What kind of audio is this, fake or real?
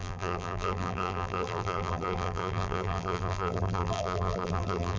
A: fake